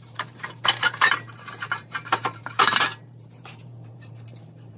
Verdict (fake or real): fake